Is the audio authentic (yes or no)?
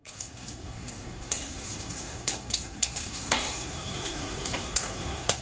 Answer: no